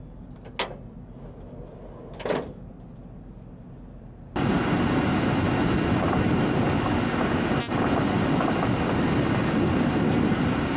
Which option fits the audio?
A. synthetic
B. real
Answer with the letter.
B